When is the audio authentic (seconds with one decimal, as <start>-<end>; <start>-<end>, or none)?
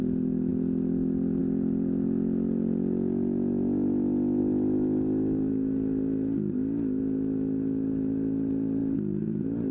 0.0-9.7